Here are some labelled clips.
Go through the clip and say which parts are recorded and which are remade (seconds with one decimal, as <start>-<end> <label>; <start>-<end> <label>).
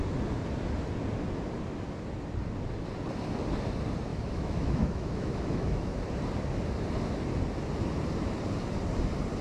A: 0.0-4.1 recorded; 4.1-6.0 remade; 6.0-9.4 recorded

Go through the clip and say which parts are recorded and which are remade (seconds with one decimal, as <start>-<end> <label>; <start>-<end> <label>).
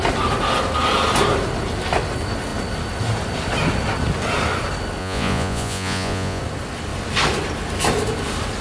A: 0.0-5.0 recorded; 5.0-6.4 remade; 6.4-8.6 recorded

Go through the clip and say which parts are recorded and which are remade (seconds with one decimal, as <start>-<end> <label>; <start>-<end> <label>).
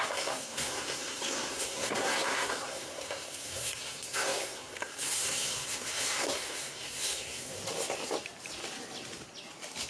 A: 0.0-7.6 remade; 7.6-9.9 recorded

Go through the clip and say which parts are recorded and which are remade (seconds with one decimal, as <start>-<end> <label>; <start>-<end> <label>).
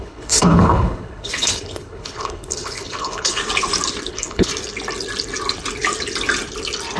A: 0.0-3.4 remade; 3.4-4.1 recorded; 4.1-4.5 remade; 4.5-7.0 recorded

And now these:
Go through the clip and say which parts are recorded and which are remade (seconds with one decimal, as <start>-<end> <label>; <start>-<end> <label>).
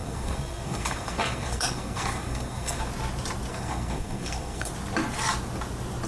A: 0.0-2.9 remade; 2.9-3.5 recorded; 3.5-4.7 remade; 4.7-6.1 recorded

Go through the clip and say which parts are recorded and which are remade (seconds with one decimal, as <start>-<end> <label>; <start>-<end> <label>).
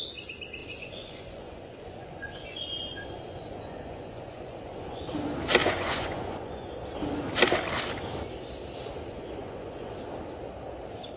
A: 0.0-0.6 recorded; 0.6-5.0 remade; 5.0-5.6 recorded; 5.6-6.7 remade; 6.7-9.1 recorded; 9.1-10.0 remade; 10.0-11.2 recorded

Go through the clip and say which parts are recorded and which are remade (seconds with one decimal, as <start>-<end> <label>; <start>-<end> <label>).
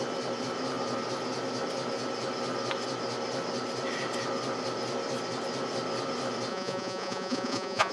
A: 0.0-6.5 recorded; 6.5-7.9 remade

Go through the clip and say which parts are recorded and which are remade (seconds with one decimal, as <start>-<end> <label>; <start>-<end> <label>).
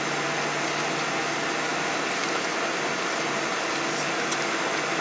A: 0.0-5.0 recorded